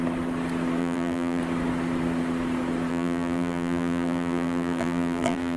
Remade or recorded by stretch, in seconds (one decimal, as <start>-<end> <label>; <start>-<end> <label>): 0.0-0.8 recorded; 0.8-1.4 remade; 1.4-2.9 recorded; 2.9-5.6 remade